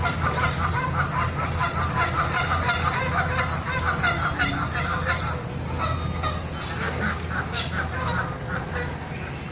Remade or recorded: recorded